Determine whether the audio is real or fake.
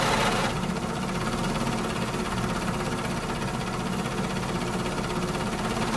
real